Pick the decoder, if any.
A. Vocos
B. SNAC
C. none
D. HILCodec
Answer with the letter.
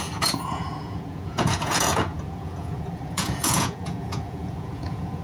A